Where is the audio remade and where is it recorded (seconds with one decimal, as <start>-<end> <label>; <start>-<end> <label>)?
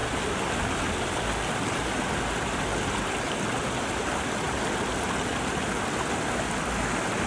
0.0-7.3 recorded